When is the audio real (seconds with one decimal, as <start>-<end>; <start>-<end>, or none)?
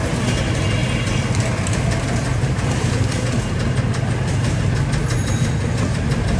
0.0-0.8; 4.6-6.4